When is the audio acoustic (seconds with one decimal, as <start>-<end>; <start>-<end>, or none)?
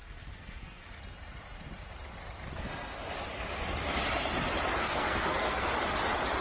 0.9-4.8; 5.7-6.4